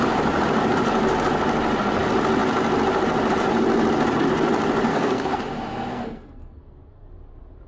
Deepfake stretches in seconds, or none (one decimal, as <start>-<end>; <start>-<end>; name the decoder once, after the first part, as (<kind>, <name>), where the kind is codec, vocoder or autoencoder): 4.9-5.4 (codec, SNAC); 5.9-7.1